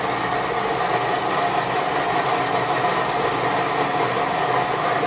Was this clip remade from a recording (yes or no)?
no